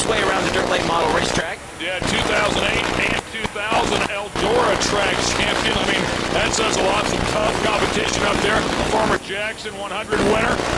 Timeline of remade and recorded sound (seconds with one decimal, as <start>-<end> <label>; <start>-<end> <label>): 0.0-1.1 recorded; 1.1-1.7 remade; 1.7-7.4 recorded; 7.4-8.5 remade; 8.5-10.8 recorded